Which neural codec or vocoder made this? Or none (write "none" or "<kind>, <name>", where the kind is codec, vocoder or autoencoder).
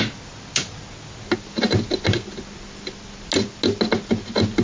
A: none